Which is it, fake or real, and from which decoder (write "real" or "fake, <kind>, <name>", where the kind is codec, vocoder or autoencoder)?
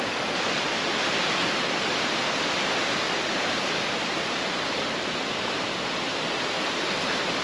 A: real